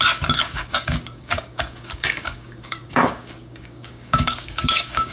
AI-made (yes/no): yes